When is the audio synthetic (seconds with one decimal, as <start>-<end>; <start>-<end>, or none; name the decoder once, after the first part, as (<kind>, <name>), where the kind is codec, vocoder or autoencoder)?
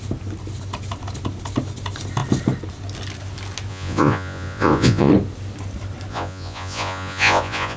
3.7-5.1 (vocoder, Vocos); 6.1-7.8